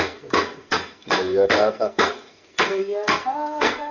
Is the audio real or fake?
fake